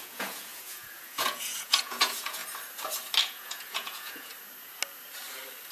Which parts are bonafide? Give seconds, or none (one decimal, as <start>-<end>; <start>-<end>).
2.4-3.2; 4.3-5.7